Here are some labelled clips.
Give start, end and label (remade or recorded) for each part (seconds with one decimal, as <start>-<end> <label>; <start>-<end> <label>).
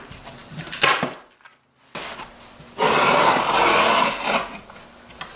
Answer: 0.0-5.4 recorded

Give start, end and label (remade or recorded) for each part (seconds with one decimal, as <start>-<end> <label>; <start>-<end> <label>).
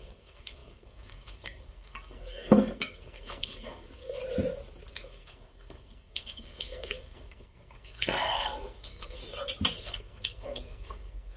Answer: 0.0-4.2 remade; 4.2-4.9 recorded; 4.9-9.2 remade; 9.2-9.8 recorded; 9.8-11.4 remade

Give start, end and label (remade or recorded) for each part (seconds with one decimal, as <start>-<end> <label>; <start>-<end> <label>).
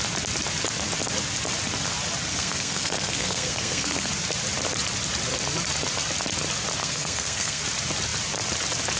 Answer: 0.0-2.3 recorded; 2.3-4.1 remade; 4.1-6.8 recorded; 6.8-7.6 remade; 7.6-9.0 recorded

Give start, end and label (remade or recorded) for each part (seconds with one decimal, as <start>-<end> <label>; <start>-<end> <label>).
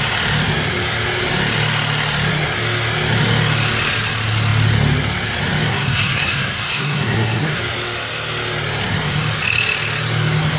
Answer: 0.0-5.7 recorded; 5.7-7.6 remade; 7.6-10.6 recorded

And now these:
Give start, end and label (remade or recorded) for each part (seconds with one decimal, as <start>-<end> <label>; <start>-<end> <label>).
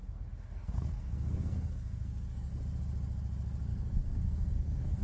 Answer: 0.0-2.5 remade; 2.5-3.7 recorded; 3.7-5.0 remade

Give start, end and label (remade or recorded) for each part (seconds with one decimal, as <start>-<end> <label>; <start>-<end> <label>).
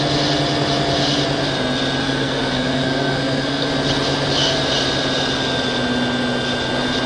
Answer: 0.0-2.0 recorded; 2.0-3.7 remade; 3.7-7.1 recorded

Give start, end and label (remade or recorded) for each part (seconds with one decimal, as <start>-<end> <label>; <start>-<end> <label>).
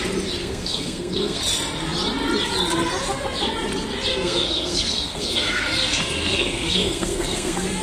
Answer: 0.0-0.4 recorded; 0.4-1.4 remade; 1.4-4.1 recorded; 4.1-7.8 remade